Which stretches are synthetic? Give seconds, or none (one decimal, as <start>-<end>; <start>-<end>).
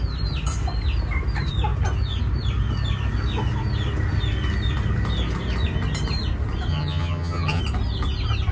6.7-7.6